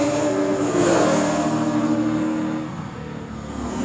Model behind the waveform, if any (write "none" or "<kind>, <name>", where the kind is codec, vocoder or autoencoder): codec, SNAC